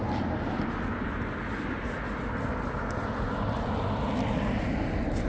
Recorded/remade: recorded